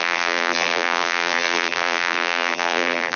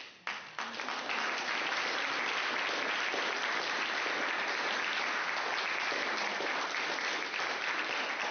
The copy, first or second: first